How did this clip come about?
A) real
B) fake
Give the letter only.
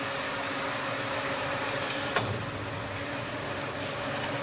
A